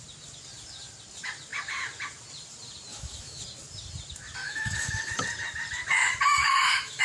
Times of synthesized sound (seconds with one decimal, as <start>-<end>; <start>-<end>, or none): 2.9-3.4; 4.4-5.1; 6.4-7.0